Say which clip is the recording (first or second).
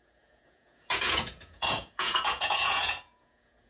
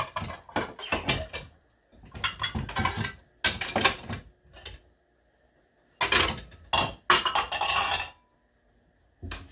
second